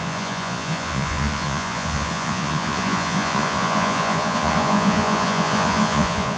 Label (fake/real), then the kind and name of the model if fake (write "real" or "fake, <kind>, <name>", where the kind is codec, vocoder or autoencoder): fake, vocoder, Vocos